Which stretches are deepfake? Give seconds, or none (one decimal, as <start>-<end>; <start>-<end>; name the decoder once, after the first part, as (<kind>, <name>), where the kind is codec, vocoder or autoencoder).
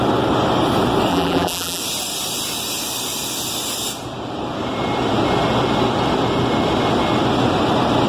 1.1-1.8 (vocoder, BigVGAN v2)